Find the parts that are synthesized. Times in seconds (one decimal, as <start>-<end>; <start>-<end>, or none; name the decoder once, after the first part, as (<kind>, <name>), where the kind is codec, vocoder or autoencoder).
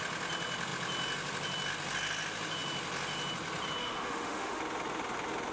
3.8-4.6 (autoencoder, DAC-VAE)